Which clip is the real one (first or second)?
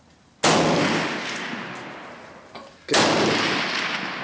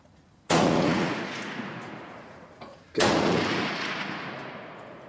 first